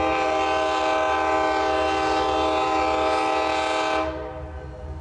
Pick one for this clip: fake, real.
real